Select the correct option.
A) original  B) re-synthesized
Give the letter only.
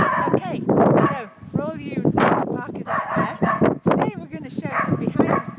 A